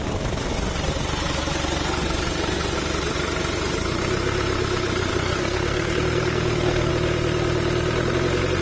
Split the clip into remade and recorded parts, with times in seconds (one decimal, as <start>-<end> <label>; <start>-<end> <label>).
0.0-5.1 recorded; 5.1-6.9 remade; 6.9-8.6 recorded